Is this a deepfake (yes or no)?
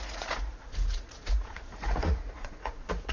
yes